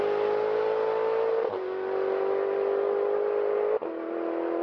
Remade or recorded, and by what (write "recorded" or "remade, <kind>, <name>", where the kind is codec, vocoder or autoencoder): recorded